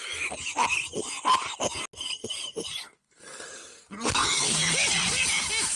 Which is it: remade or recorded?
recorded